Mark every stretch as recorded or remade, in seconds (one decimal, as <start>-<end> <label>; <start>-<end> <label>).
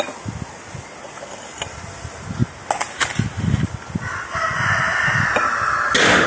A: 0.0-6.3 recorded